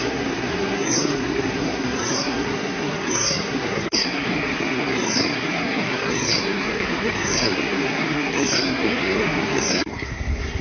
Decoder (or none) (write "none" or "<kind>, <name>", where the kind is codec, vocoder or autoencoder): codec, SNAC